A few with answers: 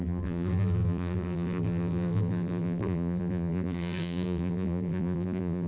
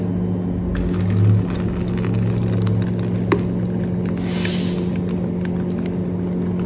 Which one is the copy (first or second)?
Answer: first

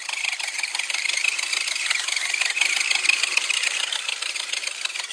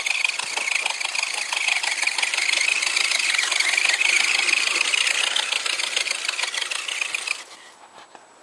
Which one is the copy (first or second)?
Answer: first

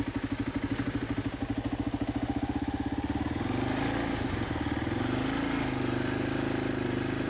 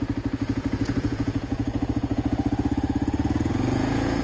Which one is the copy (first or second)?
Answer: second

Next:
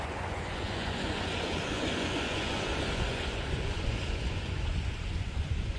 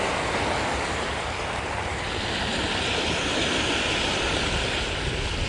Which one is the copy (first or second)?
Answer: first